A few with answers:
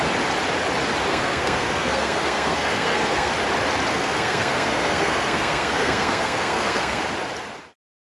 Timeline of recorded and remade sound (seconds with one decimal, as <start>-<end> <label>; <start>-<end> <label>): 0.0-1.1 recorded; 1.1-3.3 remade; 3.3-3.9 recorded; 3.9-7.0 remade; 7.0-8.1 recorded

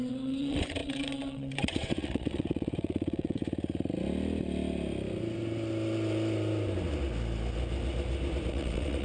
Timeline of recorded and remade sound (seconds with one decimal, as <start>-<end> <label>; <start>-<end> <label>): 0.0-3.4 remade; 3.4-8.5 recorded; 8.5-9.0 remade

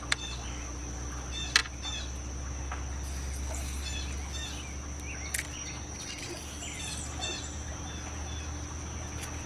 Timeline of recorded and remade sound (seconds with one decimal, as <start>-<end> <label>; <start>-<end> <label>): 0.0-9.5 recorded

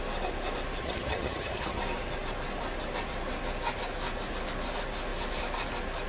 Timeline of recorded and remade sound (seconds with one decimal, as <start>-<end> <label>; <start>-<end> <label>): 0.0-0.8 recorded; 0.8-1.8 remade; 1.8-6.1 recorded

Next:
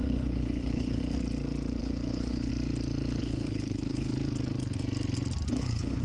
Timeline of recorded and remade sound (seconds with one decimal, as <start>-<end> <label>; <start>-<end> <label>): 0.0-1.0 remade; 1.0-1.8 recorded; 1.8-2.5 remade; 2.5-3.2 recorded; 3.2-4.1 remade; 4.1-5.5 recorded; 5.5-6.0 remade

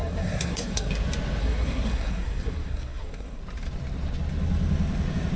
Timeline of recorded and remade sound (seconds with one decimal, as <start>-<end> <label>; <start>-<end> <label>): 0.0-0.9 remade; 0.9-1.4 recorded; 1.4-3.4 remade; 3.4-5.4 recorded

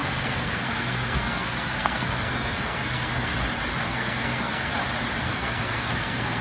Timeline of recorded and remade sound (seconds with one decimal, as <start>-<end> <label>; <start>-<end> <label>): 0.0-3.3 remade; 3.3-3.8 recorded; 3.8-4.7 remade; 4.7-5.2 recorded; 5.2-6.4 remade